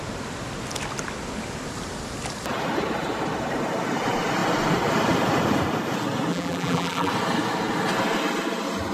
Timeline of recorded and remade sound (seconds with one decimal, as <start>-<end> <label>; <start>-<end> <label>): 0.0-6.3 recorded; 6.3-7.1 remade; 7.1-8.9 recorded